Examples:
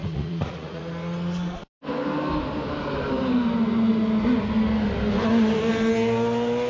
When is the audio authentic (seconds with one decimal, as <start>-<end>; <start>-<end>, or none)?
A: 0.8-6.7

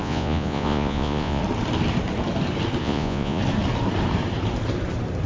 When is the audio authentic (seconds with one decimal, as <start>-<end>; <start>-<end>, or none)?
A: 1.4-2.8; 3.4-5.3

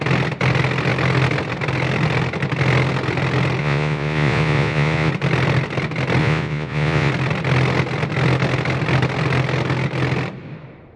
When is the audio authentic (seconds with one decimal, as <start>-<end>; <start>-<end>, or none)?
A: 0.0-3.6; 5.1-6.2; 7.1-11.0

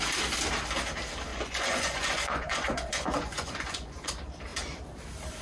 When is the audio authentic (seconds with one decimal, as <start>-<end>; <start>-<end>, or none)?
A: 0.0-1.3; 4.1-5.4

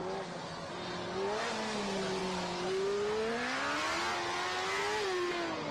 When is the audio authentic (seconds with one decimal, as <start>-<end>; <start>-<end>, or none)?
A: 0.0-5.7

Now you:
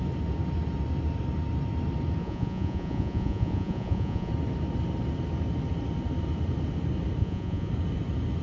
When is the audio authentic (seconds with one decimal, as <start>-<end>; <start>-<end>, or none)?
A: 0.0-2.2; 4.3-7.2; 7.7-8.4

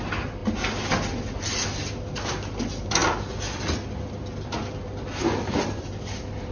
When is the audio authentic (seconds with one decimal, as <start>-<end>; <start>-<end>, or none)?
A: 0.0-6.5